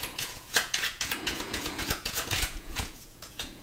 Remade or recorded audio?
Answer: remade